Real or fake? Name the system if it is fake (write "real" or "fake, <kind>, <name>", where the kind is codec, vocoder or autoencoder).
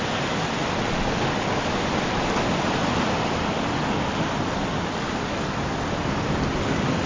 real